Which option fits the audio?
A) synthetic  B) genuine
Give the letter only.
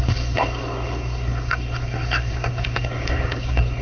A